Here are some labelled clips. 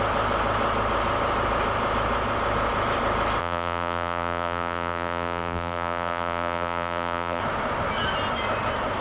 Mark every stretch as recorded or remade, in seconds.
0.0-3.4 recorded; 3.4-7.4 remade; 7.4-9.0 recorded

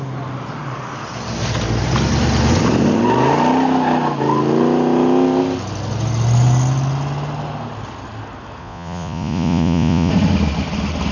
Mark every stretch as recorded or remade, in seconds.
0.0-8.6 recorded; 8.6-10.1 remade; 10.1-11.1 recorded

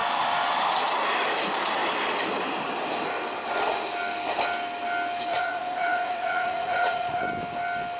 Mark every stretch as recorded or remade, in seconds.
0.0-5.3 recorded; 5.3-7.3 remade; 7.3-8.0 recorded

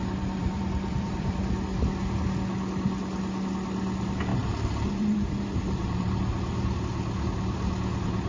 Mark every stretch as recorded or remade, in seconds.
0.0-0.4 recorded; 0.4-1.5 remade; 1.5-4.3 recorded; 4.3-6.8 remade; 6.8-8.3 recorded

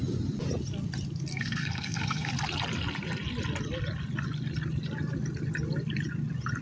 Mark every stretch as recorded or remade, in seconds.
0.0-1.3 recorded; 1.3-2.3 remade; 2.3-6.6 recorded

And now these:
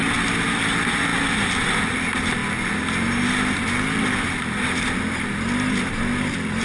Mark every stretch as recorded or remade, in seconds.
0.0-6.6 recorded

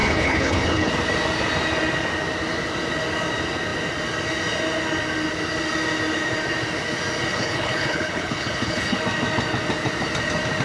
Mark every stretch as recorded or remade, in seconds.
0.0-0.9 remade; 0.9-7.3 recorded; 7.3-9.0 remade; 9.0-10.6 recorded